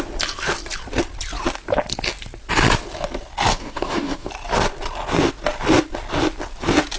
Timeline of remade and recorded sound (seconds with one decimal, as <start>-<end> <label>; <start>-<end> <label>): 0.0-3.5 recorded; 3.5-4.3 remade; 4.3-7.0 recorded